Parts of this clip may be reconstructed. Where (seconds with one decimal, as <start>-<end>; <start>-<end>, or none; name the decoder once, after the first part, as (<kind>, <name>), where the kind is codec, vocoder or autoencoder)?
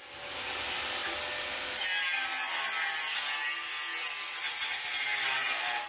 none